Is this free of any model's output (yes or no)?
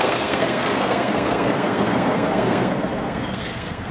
no